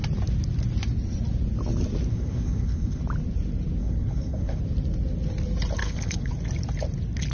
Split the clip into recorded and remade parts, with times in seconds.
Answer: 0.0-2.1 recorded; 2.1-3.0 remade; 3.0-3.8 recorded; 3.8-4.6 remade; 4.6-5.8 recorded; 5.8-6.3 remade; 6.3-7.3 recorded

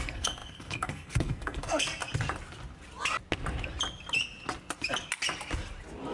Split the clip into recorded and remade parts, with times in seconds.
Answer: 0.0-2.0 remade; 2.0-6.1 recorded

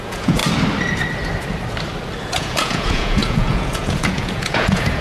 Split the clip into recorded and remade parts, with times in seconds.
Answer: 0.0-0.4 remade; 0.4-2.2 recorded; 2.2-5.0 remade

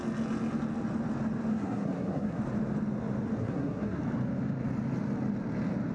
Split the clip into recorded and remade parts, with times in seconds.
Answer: 0.0-1.5 recorded; 1.5-2.4 remade; 2.4-3.4 recorded; 3.4-4.0 remade; 4.0-5.9 recorded

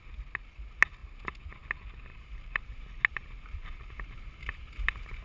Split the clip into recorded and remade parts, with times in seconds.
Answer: 0.0-2.1 recorded; 2.1-2.6 remade; 2.6-3.6 recorded; 3.6-4.6 remade; 4.6-5.2 recorded

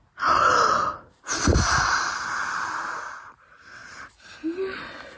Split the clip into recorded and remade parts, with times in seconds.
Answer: 0.0-1.5 recorded; 1.5-2.4 remade; 2.4-3.8 recorded; 3.8-4.8 remade; 4.8-5.2 recorded

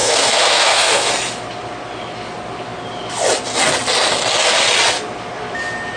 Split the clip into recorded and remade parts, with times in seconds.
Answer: 0.0-1.1 remade; 1.1-6.0 recorded

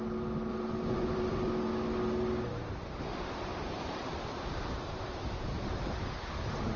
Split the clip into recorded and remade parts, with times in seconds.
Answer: 0.0-0.5 recorded; 0.5-1.5 remade; 1.5-2.5 recorded; 2.5-6.8 remade